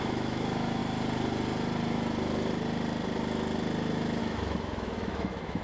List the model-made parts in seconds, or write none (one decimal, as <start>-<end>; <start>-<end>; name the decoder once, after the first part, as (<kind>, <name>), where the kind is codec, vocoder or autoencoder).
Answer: 0.0-0.8 (autoencoder, DAC-VAE); 4.2-5.6

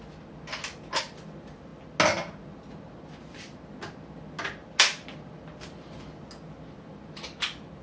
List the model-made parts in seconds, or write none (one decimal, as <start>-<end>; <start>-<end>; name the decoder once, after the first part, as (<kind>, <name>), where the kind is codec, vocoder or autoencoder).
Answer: none

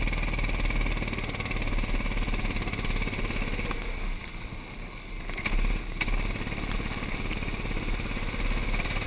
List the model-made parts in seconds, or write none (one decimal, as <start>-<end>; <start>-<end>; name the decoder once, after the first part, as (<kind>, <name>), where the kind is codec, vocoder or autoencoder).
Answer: none

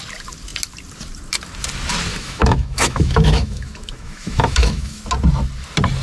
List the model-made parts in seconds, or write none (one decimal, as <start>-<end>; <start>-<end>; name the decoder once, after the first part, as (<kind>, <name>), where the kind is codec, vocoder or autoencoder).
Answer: 2.1-5.0 (autoencoder, DAC-VAE)

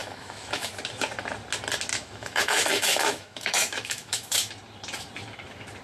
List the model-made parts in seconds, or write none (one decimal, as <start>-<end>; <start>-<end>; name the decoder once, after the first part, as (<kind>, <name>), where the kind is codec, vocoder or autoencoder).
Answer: 0.0-0.7 (autoencoder, DAC-VAE); 1.9-4.5

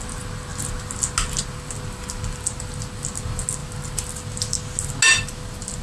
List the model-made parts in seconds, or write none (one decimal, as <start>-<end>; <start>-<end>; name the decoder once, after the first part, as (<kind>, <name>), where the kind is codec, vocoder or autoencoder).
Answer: none

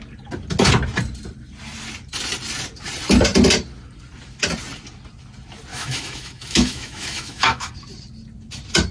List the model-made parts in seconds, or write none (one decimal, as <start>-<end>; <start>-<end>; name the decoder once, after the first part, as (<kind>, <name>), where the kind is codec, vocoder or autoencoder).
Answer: 5.7-7.7 (autoencoder, DAC-VAE)